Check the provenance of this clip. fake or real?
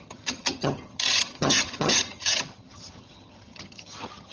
fake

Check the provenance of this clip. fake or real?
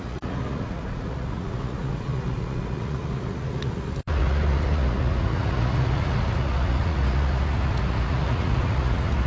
fake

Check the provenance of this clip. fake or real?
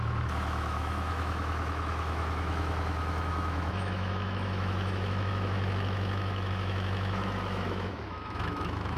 fake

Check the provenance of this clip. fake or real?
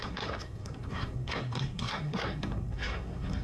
fake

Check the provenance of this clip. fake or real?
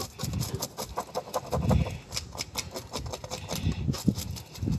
real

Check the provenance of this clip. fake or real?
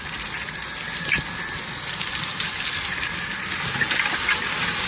real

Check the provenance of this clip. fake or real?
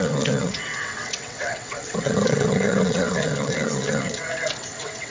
fake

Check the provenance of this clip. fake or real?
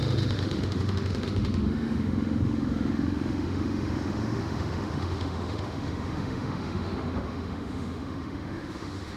fake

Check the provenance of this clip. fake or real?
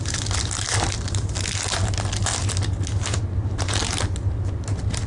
real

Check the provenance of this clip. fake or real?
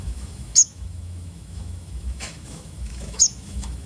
fake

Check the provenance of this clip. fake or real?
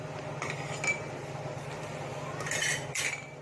real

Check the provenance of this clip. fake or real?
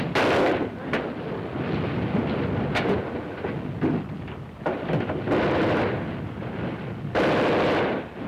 real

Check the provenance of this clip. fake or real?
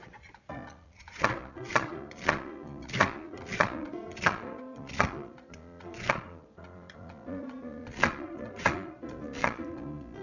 fake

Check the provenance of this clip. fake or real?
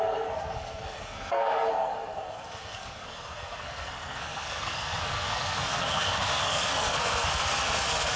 fake